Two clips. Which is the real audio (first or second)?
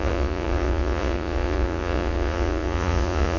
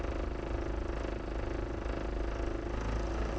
second